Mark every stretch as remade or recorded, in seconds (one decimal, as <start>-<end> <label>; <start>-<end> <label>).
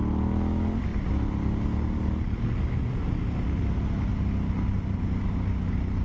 0.0-6.0 recorded